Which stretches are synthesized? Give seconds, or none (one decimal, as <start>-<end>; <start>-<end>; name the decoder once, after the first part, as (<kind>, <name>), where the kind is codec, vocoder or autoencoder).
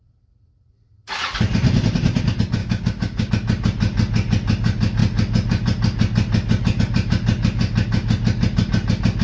2.6-3.3 (codec, DAC)